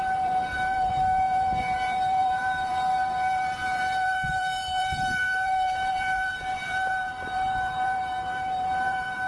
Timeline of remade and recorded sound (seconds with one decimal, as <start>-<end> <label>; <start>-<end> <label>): 0.0-9.3 remade